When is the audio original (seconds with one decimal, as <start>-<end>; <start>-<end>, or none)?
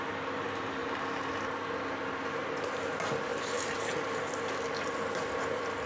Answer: 0.0-3.3; 4.3-5.9